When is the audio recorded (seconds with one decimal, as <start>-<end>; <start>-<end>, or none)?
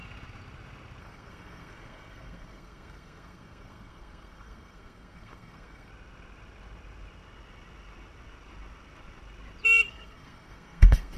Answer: 0.0-1.0; 5.9-9.9